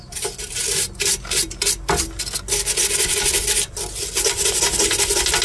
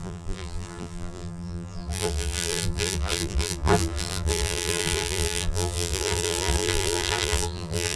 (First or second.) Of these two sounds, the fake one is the second